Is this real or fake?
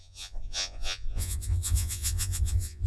fake